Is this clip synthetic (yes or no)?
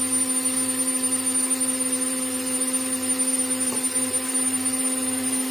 yes